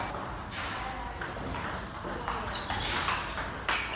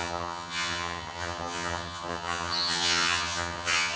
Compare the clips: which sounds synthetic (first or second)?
second